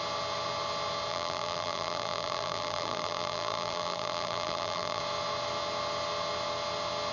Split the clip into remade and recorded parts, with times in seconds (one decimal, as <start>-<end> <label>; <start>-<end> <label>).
0.0-1.1 recorded; 1.1-5.0 remade; 5.0-7.1 recorded